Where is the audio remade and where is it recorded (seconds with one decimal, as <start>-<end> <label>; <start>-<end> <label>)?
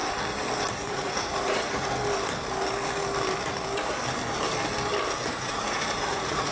0.0-0.7 recorded; 0.7-2.0 remade; 2.0-5.3 recorded; 5.3-6.5 remade